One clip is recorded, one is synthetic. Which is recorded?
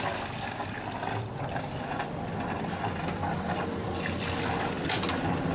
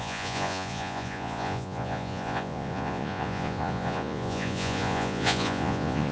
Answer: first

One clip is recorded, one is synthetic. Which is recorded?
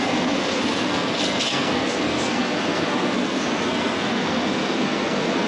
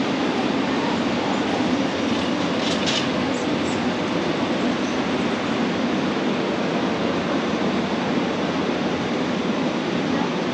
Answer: second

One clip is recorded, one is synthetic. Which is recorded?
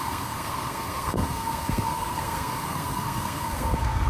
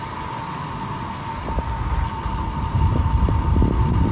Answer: second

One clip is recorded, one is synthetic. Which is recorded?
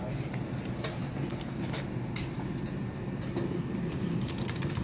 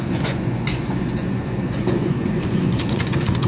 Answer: first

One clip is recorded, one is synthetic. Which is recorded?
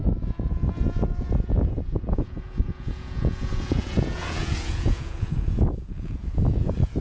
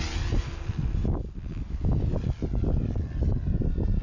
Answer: second